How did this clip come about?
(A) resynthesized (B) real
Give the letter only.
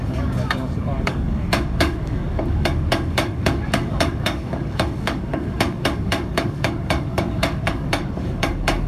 A